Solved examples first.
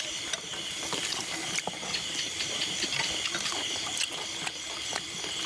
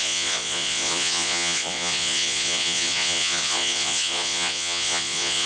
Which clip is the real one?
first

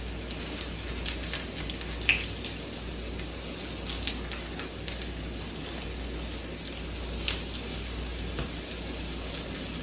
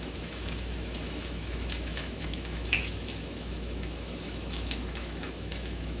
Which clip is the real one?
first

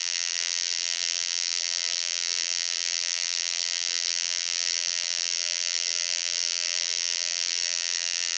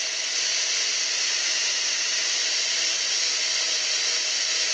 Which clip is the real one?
second